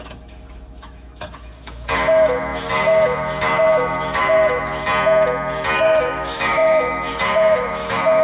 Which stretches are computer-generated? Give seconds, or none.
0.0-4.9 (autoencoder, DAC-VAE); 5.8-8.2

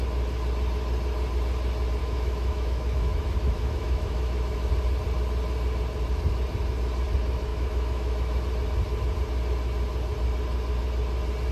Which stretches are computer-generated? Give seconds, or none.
2.0-4.7 (autoencoder, DAC-VAE); 7.5-8.4

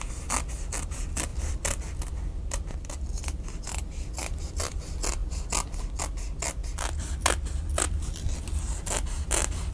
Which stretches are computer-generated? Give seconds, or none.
none

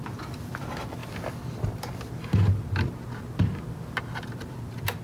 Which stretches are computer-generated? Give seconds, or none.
none